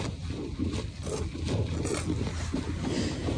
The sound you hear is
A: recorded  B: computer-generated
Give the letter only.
A